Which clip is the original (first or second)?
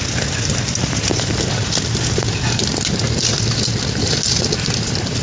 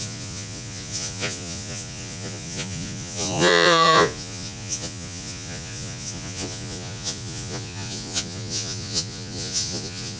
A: first